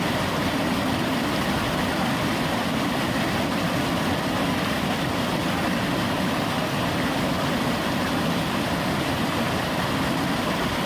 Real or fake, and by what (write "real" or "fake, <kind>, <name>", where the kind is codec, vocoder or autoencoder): fake, vocoder, BigVGAN v2